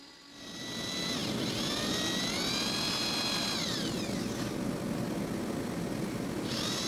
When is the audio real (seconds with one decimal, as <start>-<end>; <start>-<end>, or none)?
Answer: 0.0-6.9